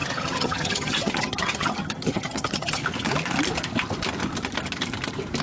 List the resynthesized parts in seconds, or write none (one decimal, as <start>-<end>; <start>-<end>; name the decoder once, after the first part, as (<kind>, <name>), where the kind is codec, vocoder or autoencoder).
0.0-2.8 (vocoder, HiFi-GAN)